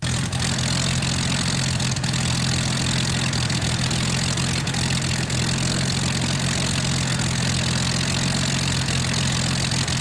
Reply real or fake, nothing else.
real